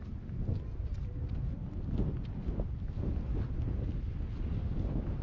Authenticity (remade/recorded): recorded